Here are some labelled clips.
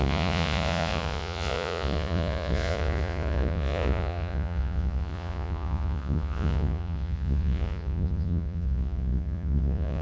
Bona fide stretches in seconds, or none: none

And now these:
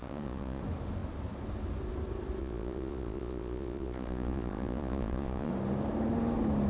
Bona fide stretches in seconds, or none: 0.6-2.4; 5.5-6.7

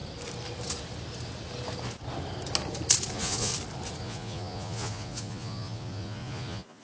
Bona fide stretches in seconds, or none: 0.0-3.1; 3.5-4.0

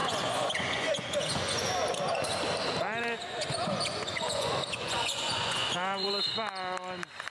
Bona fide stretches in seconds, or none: 1.7-3.2; 6.1-7.3

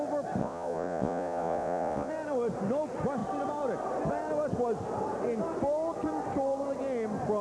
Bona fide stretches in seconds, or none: 0.0-0.4; 2.1-7.4

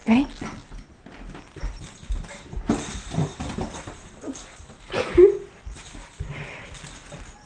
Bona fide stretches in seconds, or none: 0.0-7.5

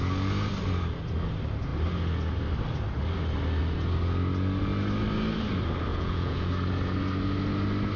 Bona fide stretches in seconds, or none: 0.0-5.9; 6.5-8.0

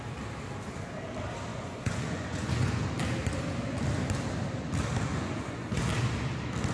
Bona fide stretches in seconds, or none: 0.0-1.5; 2.8-5.1; 5.9-6.7